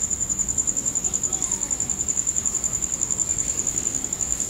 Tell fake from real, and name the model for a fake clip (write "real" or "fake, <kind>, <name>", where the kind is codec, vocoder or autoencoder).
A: fake, codec, DAC